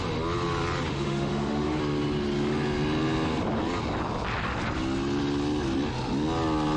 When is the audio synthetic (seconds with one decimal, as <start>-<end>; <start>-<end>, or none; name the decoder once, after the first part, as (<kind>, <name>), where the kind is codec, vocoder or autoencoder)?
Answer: 0.9-1.8 (autoencoder, DAC-VAE)